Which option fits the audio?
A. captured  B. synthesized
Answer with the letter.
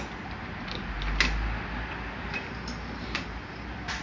A